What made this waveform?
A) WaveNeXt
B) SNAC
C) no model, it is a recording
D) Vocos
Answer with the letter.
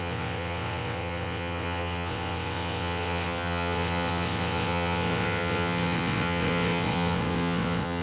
A